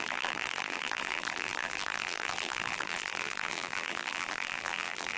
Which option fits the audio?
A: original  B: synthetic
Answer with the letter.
B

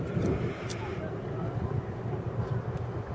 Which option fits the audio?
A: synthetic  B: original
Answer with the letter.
B